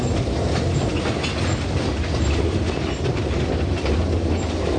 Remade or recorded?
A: recorded